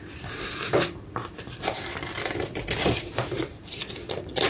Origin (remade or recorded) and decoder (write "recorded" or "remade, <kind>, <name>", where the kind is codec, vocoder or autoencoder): remade, vocoder, BigVGAN v2